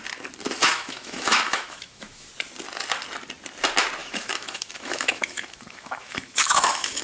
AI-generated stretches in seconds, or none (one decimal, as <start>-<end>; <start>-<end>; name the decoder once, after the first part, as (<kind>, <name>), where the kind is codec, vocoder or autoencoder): 0.6-2.3 (autoencoder, DAC-VAE); 4.0-7.0

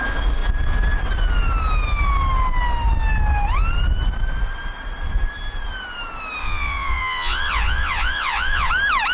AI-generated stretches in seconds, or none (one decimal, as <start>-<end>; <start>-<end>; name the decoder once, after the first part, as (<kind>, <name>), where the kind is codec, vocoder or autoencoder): 6.4-8.7 (vocoder, Vocos)

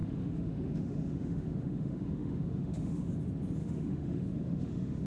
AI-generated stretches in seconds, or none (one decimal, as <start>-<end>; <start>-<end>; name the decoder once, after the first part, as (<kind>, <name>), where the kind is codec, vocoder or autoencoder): 0.0-3.1 (autoencoder, DAC-VAE); 3.6-5.1